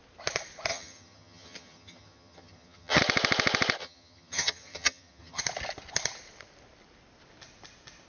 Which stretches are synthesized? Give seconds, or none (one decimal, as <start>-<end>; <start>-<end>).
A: 0.7-3.0; 3.8-5.4